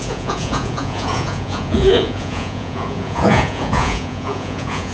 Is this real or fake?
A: fake